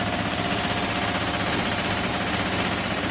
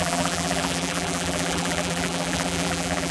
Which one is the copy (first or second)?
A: second